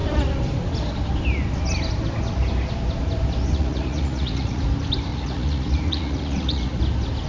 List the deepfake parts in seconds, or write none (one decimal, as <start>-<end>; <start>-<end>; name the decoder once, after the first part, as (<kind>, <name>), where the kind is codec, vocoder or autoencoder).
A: 3.5-4.6 (vocoder, Vocos); 5.1-6.8